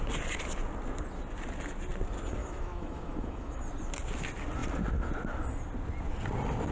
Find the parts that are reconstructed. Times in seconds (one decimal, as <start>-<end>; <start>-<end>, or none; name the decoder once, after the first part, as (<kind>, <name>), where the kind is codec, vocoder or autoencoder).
2.4-3.6 (autoencoder, DAC-VAE)